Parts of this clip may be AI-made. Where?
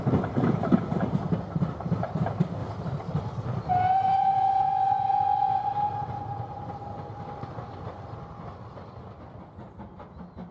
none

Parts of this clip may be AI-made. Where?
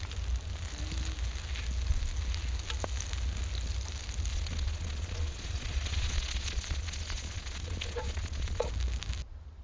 4.3-8.7 (vocoder, Vocos)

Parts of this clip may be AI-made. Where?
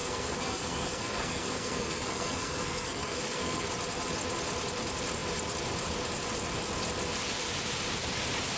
0.0-3.7 (codec, SNAC)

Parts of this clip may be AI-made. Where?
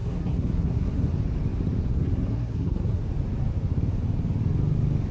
0.0-1.1 (codec, SNAC); 1.8-3.0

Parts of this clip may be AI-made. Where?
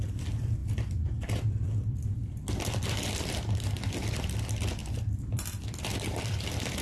0.0-6.8 (vocoder, BigVGAN v2)